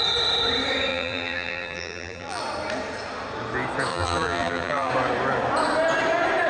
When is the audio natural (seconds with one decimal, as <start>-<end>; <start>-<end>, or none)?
0.0-0.9; 2.4-3.9; 4.9-6.5